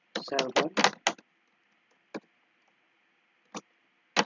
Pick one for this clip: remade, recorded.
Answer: recorded